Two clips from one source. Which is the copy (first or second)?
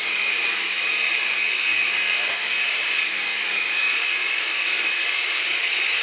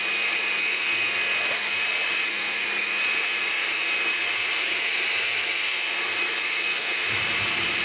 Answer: first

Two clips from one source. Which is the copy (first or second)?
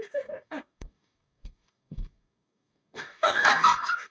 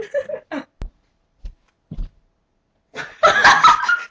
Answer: first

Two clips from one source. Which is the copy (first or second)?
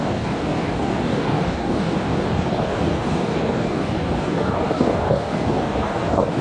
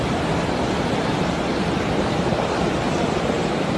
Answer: first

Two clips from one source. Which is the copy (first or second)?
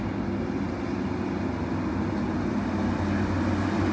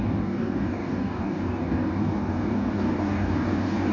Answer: second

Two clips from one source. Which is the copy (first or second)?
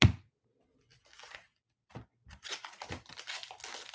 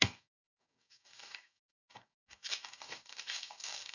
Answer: second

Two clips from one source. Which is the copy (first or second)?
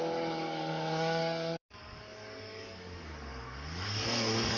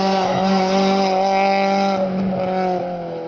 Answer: first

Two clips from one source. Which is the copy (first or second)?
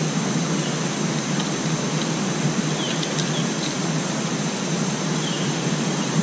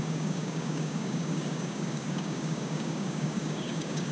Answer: second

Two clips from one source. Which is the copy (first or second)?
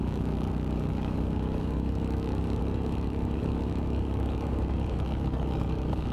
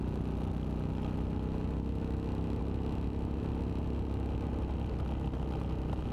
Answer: first